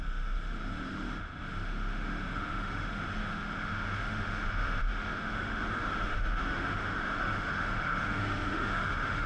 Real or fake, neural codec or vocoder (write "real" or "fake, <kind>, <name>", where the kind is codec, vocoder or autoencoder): fake, autoencoder, DAC-VAE